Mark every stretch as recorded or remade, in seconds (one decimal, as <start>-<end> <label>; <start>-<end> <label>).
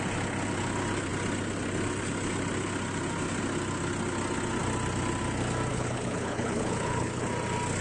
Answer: 0.0-5.7 recorded; 5.7-7.3 remade; 7.3-7.8 recorded